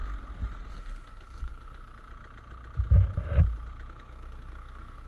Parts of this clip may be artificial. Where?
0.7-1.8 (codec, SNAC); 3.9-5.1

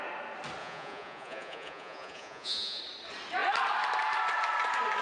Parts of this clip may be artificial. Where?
0.6-2.8 (vocoder, Vocos)

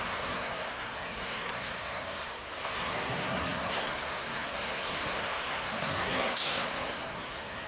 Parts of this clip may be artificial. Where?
0.0-7.7 (codec, SNAC)

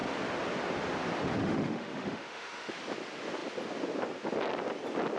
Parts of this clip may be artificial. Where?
1.4-2.7 (autoencoder, DAC-VAE)

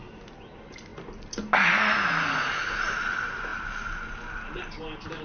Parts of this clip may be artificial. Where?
none

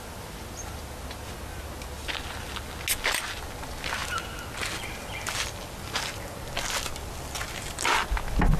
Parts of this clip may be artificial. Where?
none

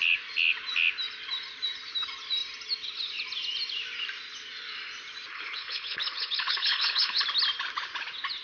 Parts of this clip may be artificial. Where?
5.3-7.2 (codec, HILCodec)

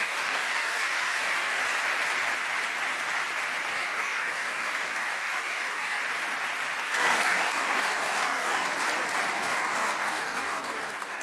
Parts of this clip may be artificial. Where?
0.0-1.6 (codec, DAC); 3.7-6.0; 6.8-8.7; 9.3-11.2